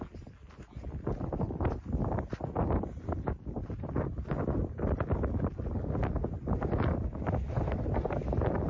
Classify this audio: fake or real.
real